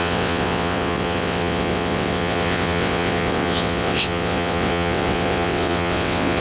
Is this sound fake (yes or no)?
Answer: yes